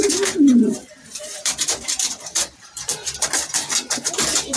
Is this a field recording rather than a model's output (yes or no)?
no